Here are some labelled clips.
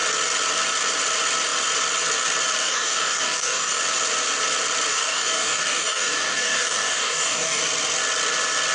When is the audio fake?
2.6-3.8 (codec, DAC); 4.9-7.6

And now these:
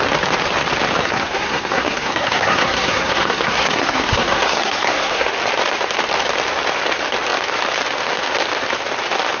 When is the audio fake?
1.0-5.3 (codec, SNAC)

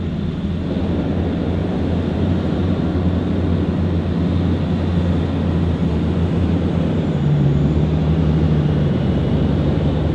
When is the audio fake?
1.6-2.8 (vocoder, BigVGAN v2); 5.8-10.1

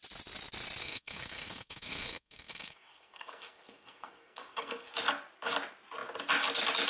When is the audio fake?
0.8-4.9 (codec, SNAC)

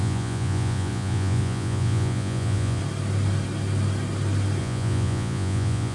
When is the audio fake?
0.0-2.8 (vocoder, Vocos); 4.6-5.9

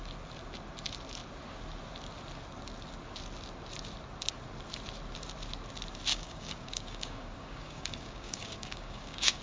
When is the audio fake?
6.1-9.4 (codec, DAC)

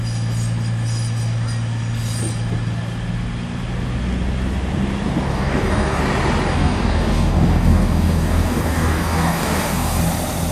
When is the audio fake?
5.3-6.0 (codec, DAC); 6.5-10.0

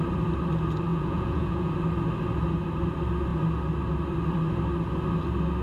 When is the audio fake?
0.9-1.7 (vocoder, Vocos)